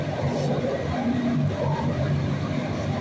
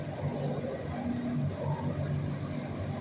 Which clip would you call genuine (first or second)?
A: second